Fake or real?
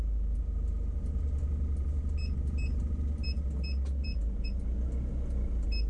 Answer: real